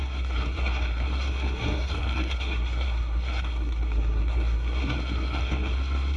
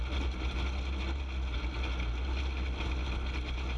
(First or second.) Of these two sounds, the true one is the second